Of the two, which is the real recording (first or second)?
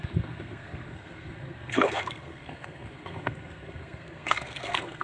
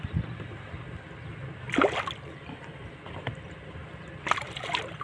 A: second